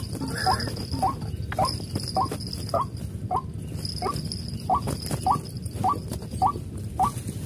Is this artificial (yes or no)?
no